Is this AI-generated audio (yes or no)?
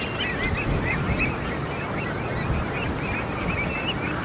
no